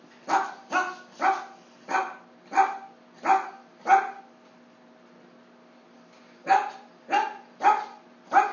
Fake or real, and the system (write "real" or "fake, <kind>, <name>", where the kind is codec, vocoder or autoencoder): real